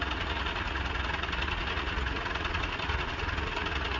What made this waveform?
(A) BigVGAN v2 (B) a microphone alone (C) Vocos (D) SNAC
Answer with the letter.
C